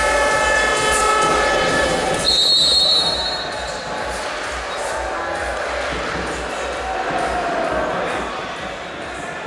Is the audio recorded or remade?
recorded